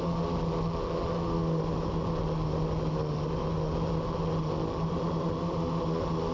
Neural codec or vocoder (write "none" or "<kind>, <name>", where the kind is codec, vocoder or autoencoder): none